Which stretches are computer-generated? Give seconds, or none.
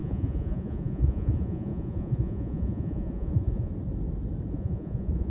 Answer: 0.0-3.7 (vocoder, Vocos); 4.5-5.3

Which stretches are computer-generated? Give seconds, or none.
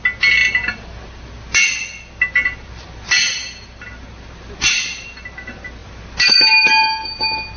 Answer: none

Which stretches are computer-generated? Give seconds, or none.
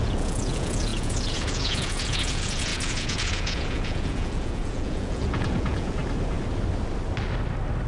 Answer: 0.0-6.0 (vocoder, Vocos)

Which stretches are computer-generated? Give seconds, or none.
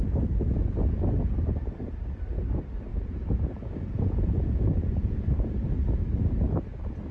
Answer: 2.9-5.3 (vocoder, Vocos)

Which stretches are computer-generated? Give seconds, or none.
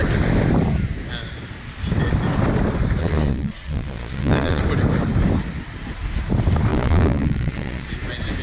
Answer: 3.0-4.6 (vocoder, Vocos); 6.7-7.9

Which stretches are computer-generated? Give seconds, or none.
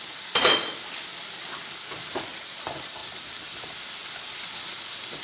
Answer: none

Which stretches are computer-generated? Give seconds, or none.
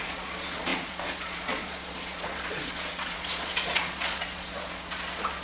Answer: 0.0-5.4 (vocoder, Vocos)